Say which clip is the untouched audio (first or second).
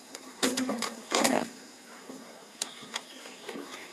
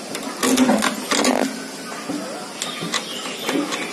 second